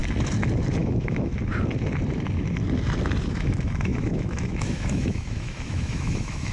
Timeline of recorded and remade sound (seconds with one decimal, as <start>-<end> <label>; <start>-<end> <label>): 0.0-0.8 recorded; 0.8-1.3 remade; 1.3-3.3 recorded; 3.3-6.5 remade